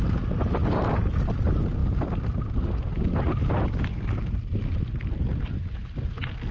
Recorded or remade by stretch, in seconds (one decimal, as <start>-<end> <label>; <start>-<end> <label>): 0.0-6.5 recorded